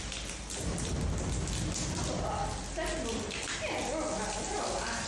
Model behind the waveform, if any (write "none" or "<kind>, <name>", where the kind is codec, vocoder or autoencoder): none